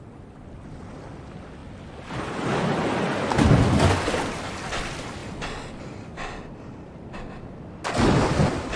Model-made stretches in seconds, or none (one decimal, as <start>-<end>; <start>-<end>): none